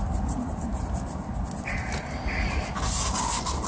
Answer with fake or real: real